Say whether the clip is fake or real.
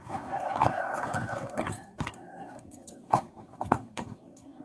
fake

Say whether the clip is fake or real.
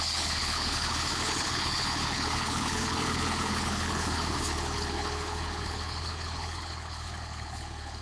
fake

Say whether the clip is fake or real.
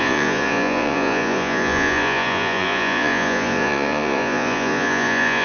fake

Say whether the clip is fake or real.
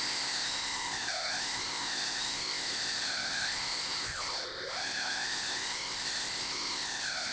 fake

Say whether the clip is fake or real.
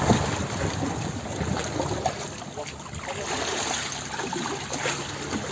real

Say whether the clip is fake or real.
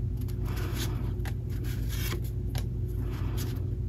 real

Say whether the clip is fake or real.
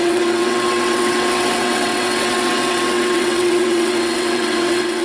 fake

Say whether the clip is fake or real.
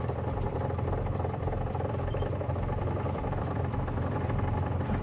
fake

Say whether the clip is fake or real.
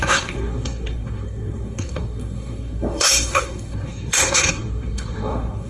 fake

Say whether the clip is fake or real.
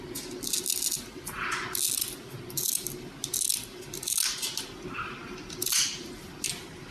real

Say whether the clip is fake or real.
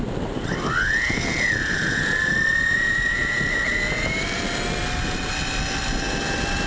real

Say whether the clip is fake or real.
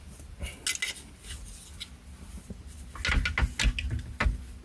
real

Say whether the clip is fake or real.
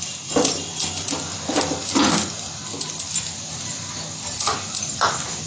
real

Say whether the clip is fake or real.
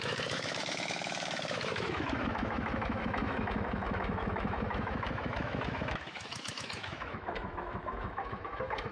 fake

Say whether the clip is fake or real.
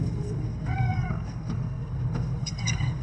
fake